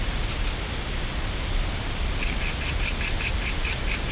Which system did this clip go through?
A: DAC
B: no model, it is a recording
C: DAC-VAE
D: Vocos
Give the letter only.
B